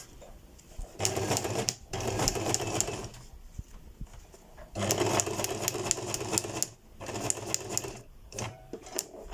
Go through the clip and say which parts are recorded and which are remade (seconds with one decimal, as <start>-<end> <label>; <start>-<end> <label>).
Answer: 0.0-3.1 remade; 3.1-8.1 recorded; 8.1-9.3 remade